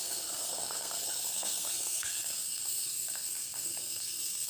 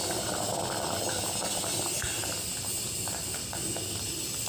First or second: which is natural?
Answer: second